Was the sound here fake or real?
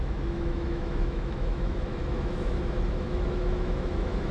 fake